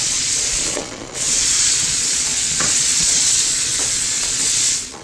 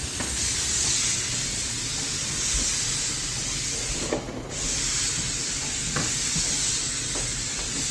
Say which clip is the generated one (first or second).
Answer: first